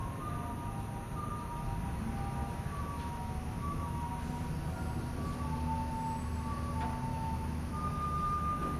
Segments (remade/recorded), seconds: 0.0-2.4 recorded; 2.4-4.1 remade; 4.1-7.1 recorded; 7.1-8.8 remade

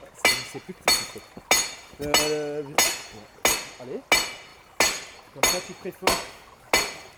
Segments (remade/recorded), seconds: 0.0-7.2 recorded

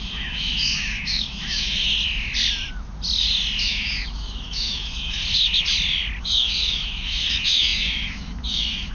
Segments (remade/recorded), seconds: 0.0-1.9 remade; 1.9-3.6 recorded; 3.6-5.2 remade; 5.2-6.2 recorded; 6.2-8.9 remade

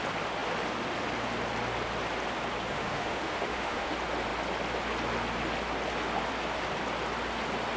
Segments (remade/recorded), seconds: 0.0-2.7 recorded; 2.7-3.9 remade; 3.9-7.8 recorded

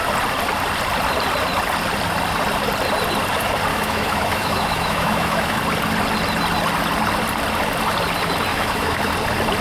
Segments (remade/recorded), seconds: 0.0-3.7 recorded; 3.7-5.6 remade; 5.6-8.5 recorded; 8.5-9.1 remade; 9.1-9.6 recorded

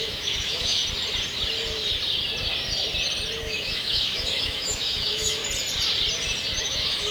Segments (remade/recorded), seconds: 0.0-0.8 remade; 0.8-3.4 recorded; 3.4-5.4 remade; 5.4-6.6 recorded; 6.6-7.1 remade

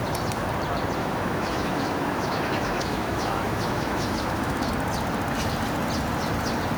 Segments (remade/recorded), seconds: 0.0-1.0 recorded; 1.0-4.7 remade; 4.7-6.8 recorded

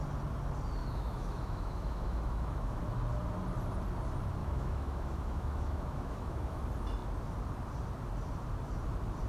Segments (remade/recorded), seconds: 0.0-0.8 recorded; 0.8-2.8 remade; 2.8-4.4 recorded; 4.4-6.6 remade; 6.6-9.3 recorded